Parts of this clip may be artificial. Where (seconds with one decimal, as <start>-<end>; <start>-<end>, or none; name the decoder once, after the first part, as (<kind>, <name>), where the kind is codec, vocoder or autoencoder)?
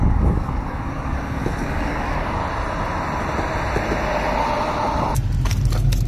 0.0-2.4 (codec, DAC)